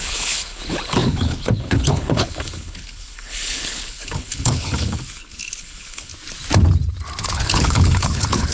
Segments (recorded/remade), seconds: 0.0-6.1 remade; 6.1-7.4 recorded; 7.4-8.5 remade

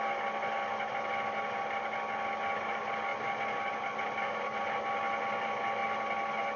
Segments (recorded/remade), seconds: 0.0-6.6 recorded

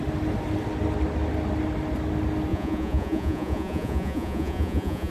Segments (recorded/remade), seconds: 0.0-2.5 recorded; 2.5-5.1 remade

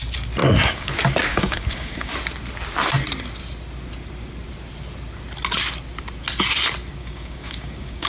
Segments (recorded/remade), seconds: 0.0-0.4 recorded; 0.4-0.9 remade; 0.9-1.3 recorded; 1.3-2.1 remade; 2.1-7.0 recorded; 7.0-8.1 remade

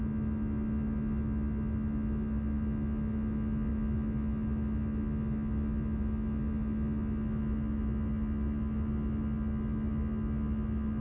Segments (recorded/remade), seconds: 0.0-11.0 recorded

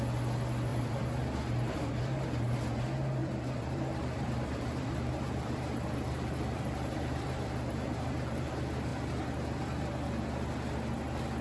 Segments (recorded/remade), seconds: 0.0-0.7 recorded; 0.7-1.4 remade; 1.4-3.2 recorded; 3.2-8.5 remade; 8.5-11.4 recorded